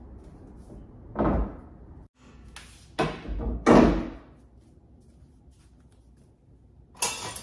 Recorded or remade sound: recorded